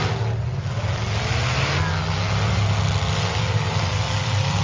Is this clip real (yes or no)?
yes